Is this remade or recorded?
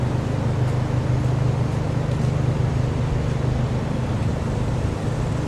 recorded